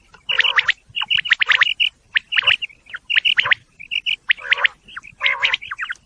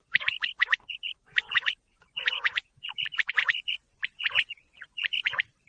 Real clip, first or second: first